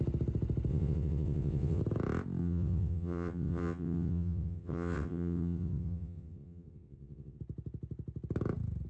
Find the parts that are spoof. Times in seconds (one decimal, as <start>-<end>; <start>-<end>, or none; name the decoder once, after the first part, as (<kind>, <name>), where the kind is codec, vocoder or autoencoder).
0.7-1.8 (vocoder, WaveNeXt); 2.4-7.4